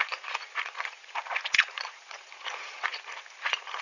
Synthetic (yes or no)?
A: yes